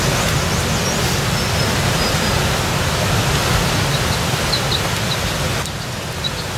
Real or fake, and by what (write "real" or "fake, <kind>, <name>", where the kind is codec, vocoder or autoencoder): real